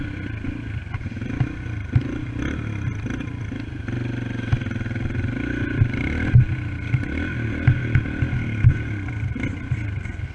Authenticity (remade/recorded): recorded